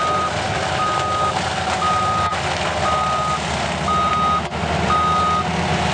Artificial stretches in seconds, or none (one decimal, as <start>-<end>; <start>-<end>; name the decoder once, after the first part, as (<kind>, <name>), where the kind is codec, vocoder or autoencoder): none